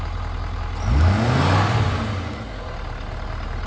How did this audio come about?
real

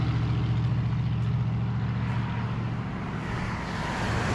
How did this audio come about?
real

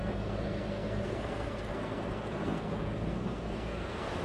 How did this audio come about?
fake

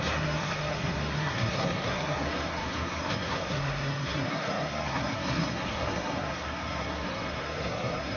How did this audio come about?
fake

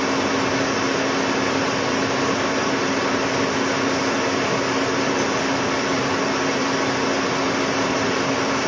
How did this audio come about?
real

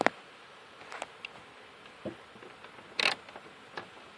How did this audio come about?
real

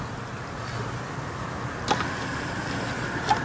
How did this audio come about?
real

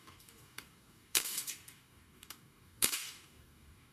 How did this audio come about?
fake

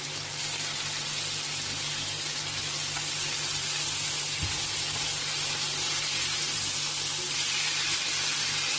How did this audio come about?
real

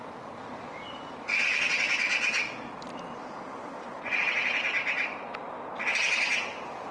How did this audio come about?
real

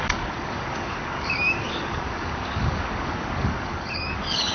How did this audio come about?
fake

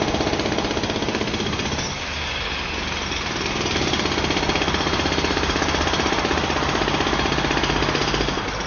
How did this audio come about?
real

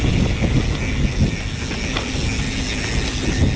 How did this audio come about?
real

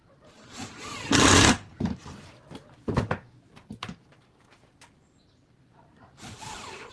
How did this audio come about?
fake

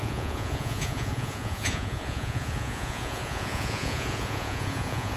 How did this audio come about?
fake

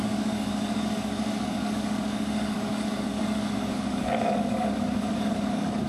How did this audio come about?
fake